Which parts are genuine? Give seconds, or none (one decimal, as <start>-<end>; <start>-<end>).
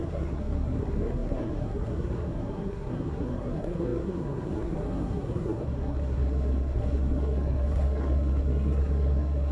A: none